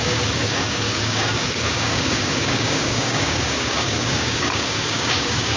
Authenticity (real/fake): fake